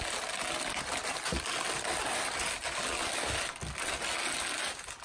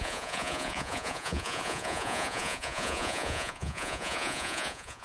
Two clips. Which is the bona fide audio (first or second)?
first